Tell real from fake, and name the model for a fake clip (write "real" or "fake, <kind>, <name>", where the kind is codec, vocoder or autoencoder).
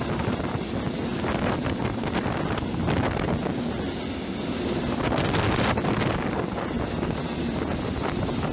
real